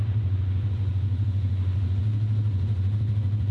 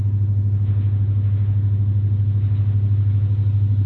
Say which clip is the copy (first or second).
first